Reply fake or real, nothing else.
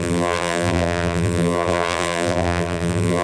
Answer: fake